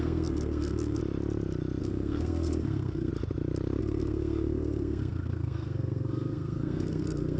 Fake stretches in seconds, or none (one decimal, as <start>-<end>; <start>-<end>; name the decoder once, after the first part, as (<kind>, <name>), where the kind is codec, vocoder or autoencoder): 0.0-1.0 (codec, SNAC); 1.8-3.1; 3.8-7.4